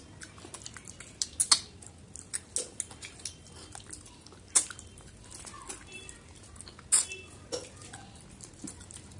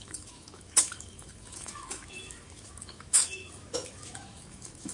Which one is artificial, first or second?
second